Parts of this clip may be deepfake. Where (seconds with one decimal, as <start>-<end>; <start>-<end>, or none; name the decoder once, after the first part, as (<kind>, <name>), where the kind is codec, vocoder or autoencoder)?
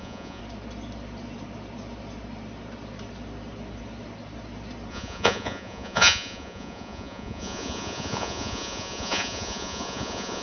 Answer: 0.0-0.4 (vocoder, Vocos); 4.9-10.4